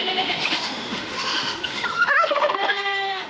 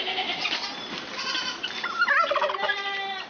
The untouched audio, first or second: second